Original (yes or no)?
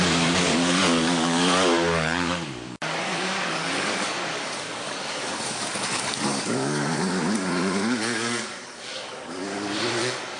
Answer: no